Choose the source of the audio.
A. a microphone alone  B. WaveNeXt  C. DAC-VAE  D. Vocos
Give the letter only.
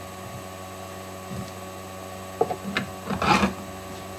A